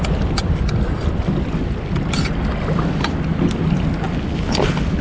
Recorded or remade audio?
recorded